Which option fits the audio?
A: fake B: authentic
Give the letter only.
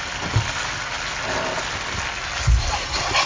B